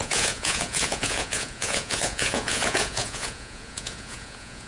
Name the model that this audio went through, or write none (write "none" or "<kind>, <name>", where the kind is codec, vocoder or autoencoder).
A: vocoder, Vocos